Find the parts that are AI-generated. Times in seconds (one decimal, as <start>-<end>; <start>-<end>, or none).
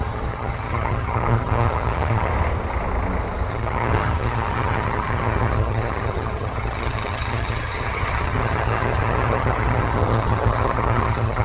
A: 0.0-2.3; 3.5-11.4